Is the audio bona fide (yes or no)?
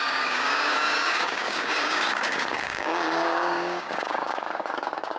no